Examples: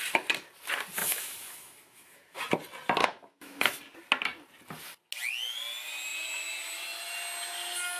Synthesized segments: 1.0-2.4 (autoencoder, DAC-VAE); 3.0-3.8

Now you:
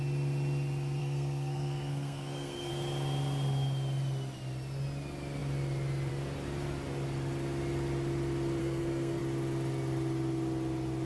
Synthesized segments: 1.0-2.7 (codec, SNAC); 8.6-9.2

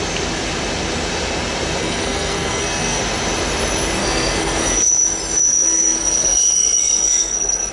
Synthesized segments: 1.8-3.0 (codec, SNAC); 4.0-4.9; 5.5-7.7